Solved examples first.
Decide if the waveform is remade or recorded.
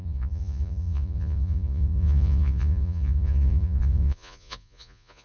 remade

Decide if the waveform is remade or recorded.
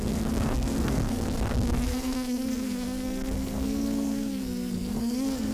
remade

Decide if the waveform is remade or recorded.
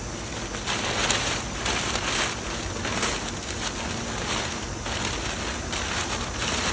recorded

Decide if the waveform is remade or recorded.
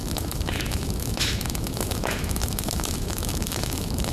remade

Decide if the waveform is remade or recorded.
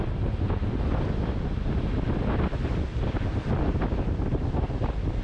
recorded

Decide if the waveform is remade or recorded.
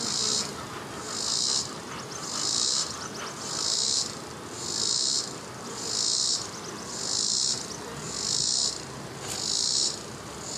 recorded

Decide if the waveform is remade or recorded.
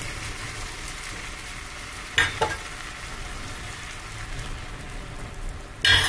recorded